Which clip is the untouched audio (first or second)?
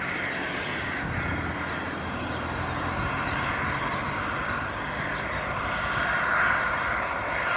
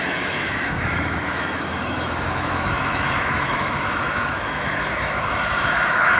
first